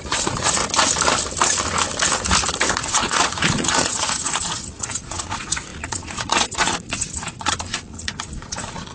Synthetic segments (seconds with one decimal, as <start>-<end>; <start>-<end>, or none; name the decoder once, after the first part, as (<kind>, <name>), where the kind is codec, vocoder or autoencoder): 0.0-0.6 (vocoder, Vocos); 2.7-8.9